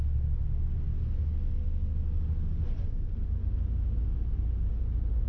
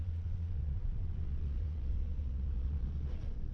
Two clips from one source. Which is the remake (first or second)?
second